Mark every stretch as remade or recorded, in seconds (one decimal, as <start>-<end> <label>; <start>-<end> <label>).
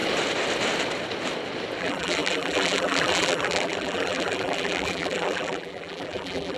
0.0-1.8 recorded; 1.8-6.6 remade